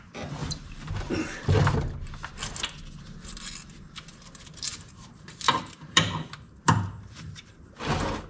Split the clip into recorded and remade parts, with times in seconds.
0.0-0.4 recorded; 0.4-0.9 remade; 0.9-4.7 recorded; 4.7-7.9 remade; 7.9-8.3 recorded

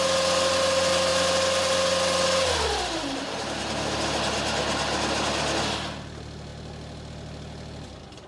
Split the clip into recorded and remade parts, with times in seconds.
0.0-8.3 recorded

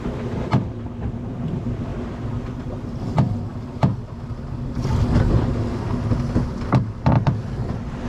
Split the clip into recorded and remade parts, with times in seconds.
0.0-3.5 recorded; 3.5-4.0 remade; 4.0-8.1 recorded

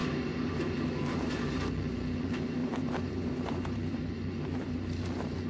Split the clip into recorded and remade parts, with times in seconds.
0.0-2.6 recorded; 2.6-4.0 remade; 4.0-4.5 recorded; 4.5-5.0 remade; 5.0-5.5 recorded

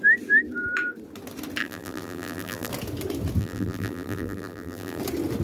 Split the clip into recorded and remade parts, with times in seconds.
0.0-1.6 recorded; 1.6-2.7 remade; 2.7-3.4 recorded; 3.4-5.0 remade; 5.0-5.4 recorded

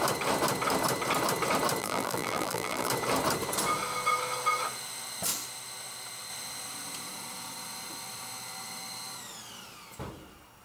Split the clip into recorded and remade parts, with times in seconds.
0.0-1.8 recorded; 1.8-2.9 remade; 2.9-10.6 recorded

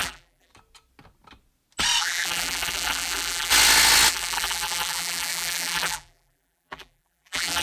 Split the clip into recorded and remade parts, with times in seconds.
0.0-0.5 remade; 0.5-2.0 recorded; 2.0-3.5 remade; 3.5-4.1 recorded; 4.1-7.6 remade